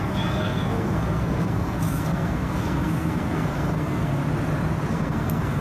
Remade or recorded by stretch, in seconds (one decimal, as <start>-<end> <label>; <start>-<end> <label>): 0.0-4.2 remade; 4.2-4.9 recorded; 4.9-5.6 remade